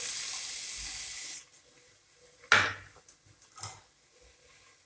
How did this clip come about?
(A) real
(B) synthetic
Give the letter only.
A